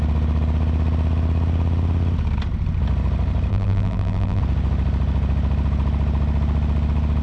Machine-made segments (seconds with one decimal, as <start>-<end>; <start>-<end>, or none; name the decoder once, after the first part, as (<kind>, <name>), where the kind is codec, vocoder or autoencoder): 3.5-4.4 (vocoder, BigVGAN v2)